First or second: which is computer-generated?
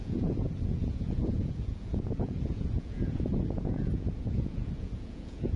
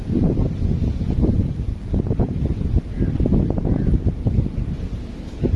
first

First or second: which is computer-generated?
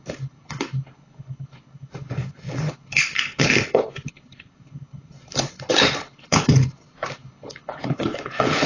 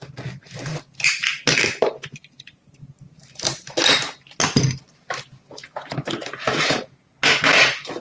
first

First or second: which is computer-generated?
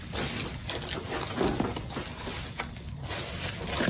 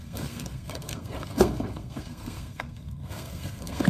second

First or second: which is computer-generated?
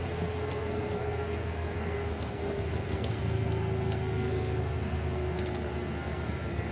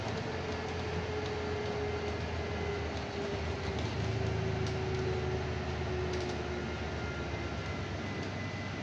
first